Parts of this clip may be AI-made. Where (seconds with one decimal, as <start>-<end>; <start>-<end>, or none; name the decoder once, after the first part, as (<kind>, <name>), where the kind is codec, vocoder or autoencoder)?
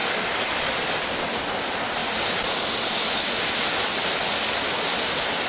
0.0-1.4 (vocoder, BigVGAN v2)